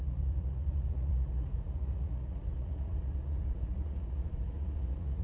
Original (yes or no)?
no